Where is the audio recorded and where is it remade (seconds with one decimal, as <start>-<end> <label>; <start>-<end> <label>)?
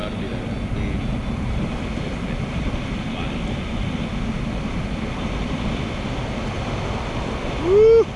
0.0-8.2 recorded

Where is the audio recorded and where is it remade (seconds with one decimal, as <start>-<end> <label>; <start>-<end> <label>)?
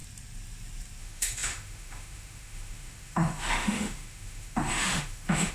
0.0-1.0 recorded; 1.0-5.5 remade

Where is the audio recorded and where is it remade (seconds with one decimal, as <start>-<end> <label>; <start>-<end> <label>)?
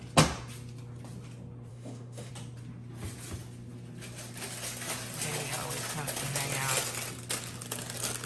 0.0-1.7 recorded; 1.7-2.3 remade; 2.3-8.3 recorded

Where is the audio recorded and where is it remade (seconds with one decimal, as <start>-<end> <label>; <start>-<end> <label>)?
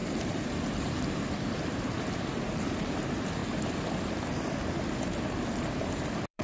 0.0-3.4 remade; 3.4-5.6 recorded; 5.6-6.4 remade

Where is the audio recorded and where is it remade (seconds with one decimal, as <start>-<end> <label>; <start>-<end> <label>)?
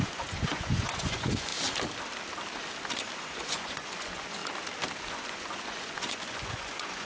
0.0-1.5 remade; 1.5-3.1 recorded; 3.1-4.4 remade; 4.4-5.1 recorded; 5.1-7.1 remade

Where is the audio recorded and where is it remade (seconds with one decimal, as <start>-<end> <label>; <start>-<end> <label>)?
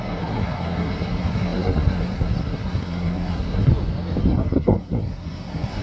0.0-3.7 remade; 3.7-4.2 recorded; 4.2-5.8 remade